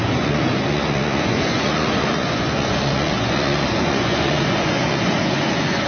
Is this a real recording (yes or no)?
no